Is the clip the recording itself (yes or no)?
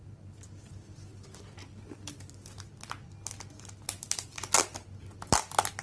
yes